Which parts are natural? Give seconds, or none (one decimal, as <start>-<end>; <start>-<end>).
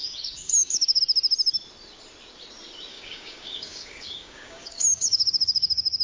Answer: 1.0-2.9